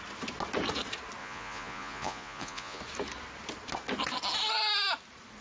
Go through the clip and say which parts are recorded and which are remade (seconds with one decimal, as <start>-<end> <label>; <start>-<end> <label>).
0.0-1.2 recorded; 1.2-2.8 remade; 2.8-5.4 recorded